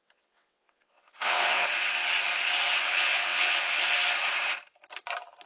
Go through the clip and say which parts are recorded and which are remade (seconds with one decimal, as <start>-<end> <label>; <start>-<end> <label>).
0.0-1.6 remade; 1.6-2.8 recorded; 2.8-3.8 remade; 3.8-5.5 recorded